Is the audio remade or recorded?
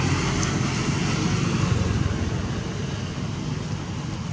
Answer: recorded